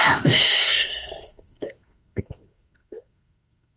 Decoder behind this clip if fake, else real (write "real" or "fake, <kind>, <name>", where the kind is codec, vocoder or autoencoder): fake, codec, SNAC